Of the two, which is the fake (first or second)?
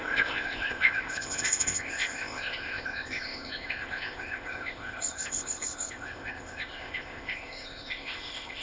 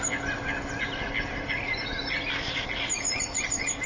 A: first